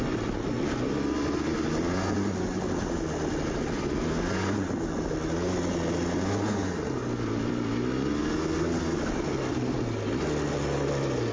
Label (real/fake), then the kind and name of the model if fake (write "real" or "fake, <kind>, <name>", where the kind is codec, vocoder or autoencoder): real